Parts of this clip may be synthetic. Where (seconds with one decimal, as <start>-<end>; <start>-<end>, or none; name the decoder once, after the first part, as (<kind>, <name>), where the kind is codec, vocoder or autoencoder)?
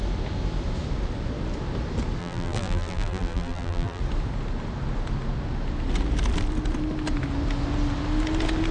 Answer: 2.2-4.0 (vocoder, BigVGAN v2)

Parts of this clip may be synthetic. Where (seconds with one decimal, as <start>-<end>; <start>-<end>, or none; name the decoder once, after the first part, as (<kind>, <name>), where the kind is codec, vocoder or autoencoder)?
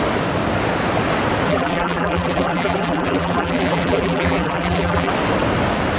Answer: 1.5-5.1 (vocoder, BigVGAN v2)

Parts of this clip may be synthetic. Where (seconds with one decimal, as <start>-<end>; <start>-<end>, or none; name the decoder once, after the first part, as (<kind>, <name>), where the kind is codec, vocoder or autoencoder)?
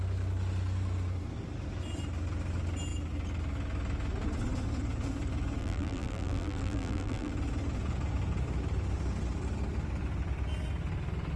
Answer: 5.6-7.3 (vocoder, BigVGAN v2)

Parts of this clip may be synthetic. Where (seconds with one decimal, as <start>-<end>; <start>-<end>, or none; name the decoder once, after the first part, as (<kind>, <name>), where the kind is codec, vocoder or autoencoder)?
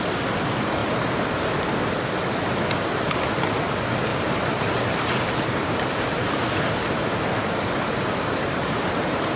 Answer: 0.8-1.6 (vocoder, BigVGAN v2); 4.1-9.4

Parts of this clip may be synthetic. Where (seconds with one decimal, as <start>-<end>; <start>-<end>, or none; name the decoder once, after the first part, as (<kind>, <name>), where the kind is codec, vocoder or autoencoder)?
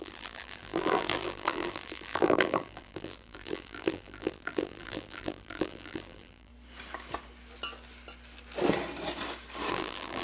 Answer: 0.0-6.5 (vocoder, BigVGAN v2); 9.7-10.2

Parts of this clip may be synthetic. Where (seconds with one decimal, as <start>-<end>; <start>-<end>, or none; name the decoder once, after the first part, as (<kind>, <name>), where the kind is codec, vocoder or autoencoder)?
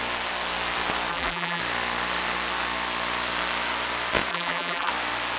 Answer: 1.1-1.6 (vocoder, BigVGAN v2); 4.3-4.9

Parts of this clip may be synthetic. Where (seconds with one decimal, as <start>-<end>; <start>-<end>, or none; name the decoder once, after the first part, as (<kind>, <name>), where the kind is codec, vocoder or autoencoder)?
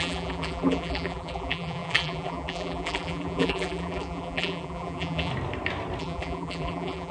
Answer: 0.0-5.3 (vocoder, BigVGAN v2); 6.0-7.1